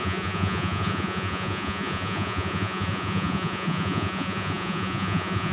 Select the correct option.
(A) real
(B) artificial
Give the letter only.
B